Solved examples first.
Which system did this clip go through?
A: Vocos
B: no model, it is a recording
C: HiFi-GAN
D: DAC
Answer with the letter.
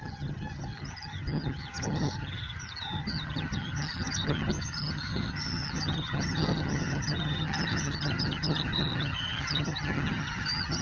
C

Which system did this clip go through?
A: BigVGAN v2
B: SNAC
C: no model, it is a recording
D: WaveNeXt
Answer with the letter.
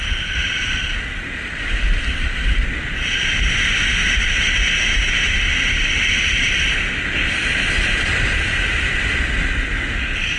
C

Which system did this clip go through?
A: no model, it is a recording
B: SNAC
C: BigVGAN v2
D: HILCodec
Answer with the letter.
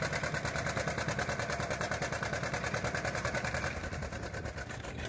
A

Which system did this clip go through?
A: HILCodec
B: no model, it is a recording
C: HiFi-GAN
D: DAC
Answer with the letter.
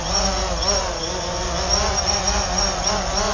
B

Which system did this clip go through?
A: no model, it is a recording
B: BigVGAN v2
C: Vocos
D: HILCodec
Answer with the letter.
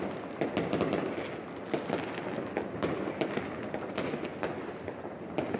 A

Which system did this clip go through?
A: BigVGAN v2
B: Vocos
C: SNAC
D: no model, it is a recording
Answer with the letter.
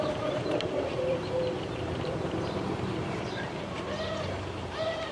A